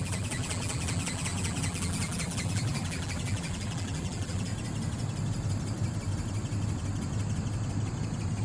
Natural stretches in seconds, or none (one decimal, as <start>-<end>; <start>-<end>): 4.5-8.4